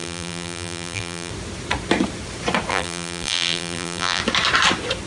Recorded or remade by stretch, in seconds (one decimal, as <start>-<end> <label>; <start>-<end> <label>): 0.0-1.3 remade; 1.3-2.7 recorded; 2.7-4.2 remade; 4.2-5.1 recorded